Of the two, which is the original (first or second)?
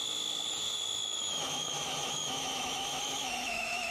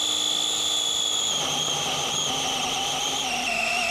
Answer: second